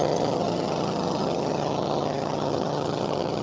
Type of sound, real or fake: fake